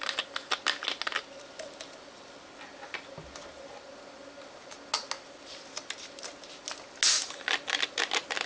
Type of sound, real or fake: real